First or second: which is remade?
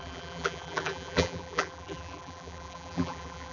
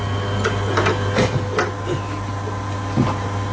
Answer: first